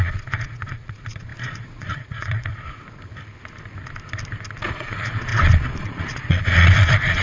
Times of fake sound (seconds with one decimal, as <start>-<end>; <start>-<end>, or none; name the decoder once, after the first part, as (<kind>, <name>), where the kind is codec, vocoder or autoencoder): 0.0-2.5 (vocoder, Vocos); 4.7-7.2